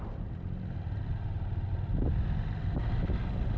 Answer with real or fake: real